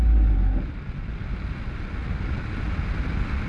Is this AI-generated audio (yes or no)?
no